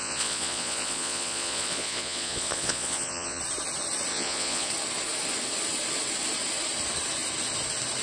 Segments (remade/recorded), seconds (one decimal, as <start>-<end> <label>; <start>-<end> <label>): 0.0-3.4 remade; 3.4-4.1 recorded; 4.1-4.7 remade; 4.7-8.0 recorded